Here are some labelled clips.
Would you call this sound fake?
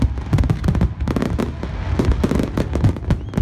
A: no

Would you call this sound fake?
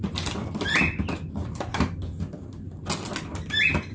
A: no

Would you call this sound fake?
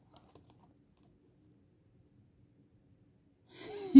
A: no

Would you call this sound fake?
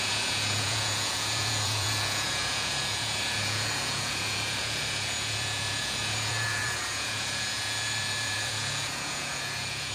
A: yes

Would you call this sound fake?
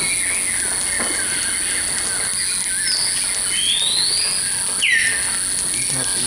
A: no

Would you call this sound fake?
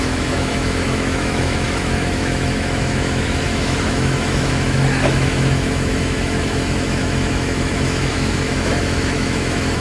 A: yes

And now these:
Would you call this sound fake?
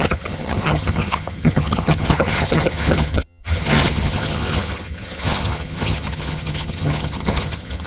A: yes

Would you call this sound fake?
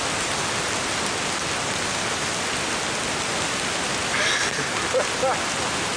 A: no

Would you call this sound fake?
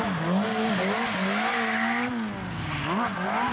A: no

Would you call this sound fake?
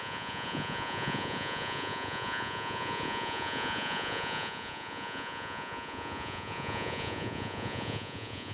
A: yes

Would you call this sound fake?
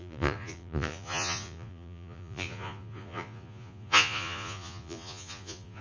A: yes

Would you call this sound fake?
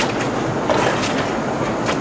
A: no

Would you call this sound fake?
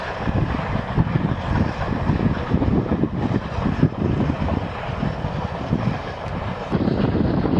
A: no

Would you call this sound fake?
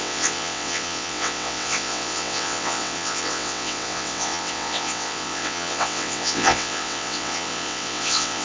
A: yes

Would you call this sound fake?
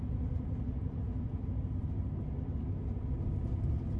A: no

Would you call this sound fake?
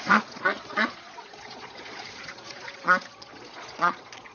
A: yes